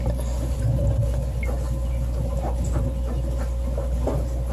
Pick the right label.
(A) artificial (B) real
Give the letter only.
B